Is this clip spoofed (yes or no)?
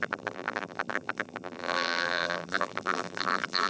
yes